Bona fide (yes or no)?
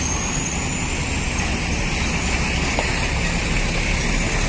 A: yes